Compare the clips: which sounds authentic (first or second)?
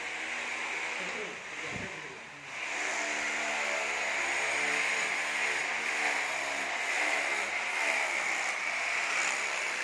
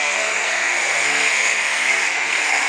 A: first